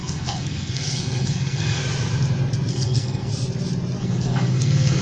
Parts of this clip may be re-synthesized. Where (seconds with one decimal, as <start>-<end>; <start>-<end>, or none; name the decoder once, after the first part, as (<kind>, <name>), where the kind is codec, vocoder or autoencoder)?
0.0-1.8 (codec, SNAC); 2.7-3.3; 4.0-5.0